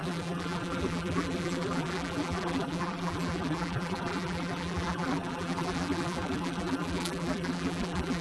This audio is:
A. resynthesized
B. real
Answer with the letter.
A